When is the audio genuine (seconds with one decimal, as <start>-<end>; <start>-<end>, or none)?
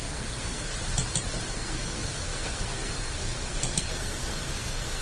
0.7-1.5